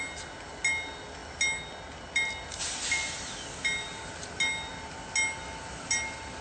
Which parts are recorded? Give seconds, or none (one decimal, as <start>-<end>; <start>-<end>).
0.0-6.4